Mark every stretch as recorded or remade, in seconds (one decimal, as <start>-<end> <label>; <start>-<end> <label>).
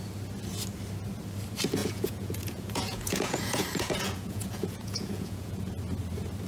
0.0-1.8 recorded; 1.8-5.7 remade; 5.7-6.5 recorded